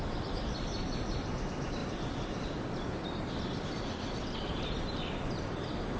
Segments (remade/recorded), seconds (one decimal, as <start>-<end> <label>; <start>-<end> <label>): 0.0-1.8 recorded; 1.8-5.4 remade; 5.4-6.0 recorded